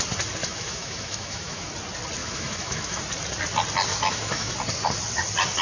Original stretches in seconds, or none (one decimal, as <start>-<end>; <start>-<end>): 0.0-0.4; 1.7-2.2; 3.0-3.9; 4.5-5.6